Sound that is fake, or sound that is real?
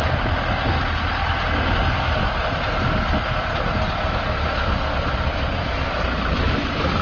real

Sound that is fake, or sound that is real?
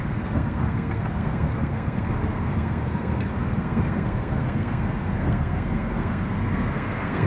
fake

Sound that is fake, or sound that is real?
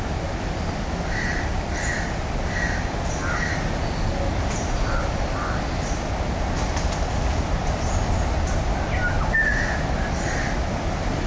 real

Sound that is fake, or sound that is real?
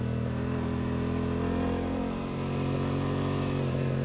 real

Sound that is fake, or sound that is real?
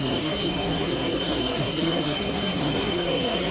fake